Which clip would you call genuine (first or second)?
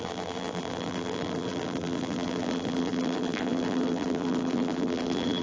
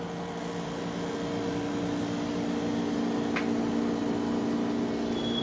second